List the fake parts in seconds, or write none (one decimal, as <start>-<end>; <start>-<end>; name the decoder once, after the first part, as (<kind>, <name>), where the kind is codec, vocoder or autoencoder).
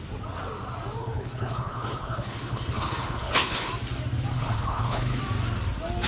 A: 1.0-3.7 (codec, HILCodec); 4.3-5.2